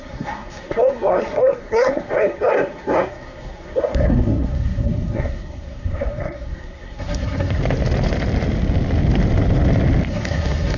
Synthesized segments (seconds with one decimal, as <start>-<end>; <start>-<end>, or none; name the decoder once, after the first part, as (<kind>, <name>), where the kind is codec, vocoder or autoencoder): 0.0-7.6 (codec, SNAC); 10.1-10.8